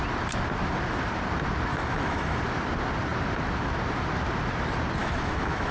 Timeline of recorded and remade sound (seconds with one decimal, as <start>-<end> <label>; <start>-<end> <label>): 0.0-1.7 recorded; 1.7-2.4 remade; 2.4-5.0 recorded; 5.0-5.7 remade

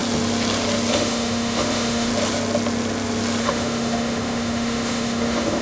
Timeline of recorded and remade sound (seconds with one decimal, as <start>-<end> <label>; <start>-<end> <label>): 0.0-0.9 recorded; 0.9-2.1 remade; 2.1-3.4 recorded; 3.4-5.6 remade

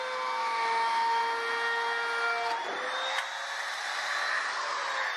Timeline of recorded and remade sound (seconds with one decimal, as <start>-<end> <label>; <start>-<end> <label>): 0.0-0.4 recorded; 0.4-1.2 remade; 1.2-5.2 recorded

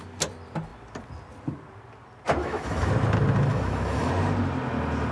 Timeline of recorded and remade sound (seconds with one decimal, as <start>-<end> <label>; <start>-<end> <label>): 0.0-2.4 recorded; 2.4-2.9 remade; 2.9-3.5 recorded; 3.5-4.1 remade; 4.1-5.1 recorded

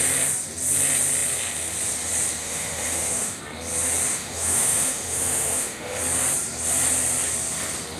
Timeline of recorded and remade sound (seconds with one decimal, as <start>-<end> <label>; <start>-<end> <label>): 0.0-2.4 recorded; 2.4-3.4 remade; 3.4-4.1 recorded; 4.1-6.0 remade; 6.0-8.0 recorded

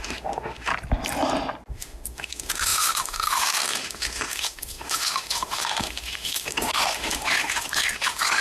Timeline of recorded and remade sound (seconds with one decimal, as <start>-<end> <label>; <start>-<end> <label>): 0.0-0.7 remade; 0.7-1.7 recorded; 1.7-8.4 remade

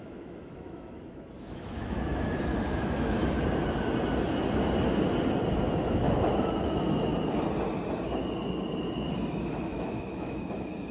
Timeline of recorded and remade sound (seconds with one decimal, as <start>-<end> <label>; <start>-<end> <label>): 0.0-3.2 remade; 3.2-5.5 recorded; 5.5-7.1 remade; 7.1-9.5 recorded; 9.5-10.9 remade